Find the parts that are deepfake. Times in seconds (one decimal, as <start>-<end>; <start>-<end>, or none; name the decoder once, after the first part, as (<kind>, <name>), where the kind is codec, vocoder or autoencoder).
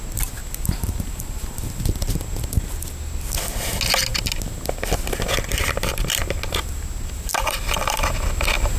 0.4-2.5 (vocoder, BigVGAN v2); 7.3-8.0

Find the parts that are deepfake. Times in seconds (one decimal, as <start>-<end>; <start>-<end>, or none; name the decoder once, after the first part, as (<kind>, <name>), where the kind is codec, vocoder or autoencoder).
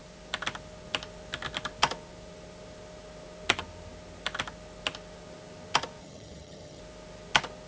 6.0-6.8 (vocoder, HiFi-GAN)